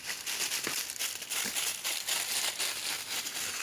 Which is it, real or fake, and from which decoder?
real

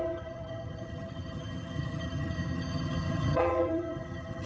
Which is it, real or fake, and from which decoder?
fake, vocoder, HiFi-GAN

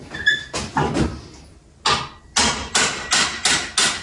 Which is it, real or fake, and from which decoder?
real